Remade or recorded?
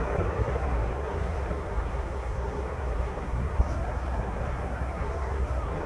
remade